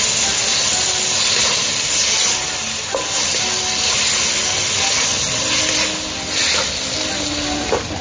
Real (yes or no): yes